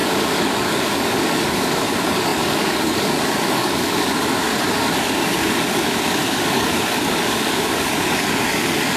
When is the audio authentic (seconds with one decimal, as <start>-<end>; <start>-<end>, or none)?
4.5-5.0